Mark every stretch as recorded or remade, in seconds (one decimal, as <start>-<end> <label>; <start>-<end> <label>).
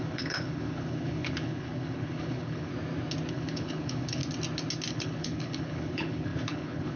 0.0-2.7 remade; 2.7-3.3 recorded; 3.3-4.2 remade; 4.2-4.9 recorded; 4.9-7.0 remade